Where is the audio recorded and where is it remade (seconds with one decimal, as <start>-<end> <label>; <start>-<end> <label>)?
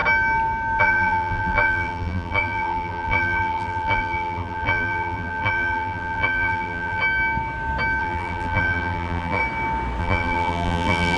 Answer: 0.0-0.8 recorded; 0.8-7.0 remade; 7.0-8.0 recorded; 8.0-9.4 remade; 9.4-10.0 recorded; 10.0-11.2 remade